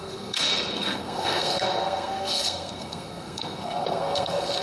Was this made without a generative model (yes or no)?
no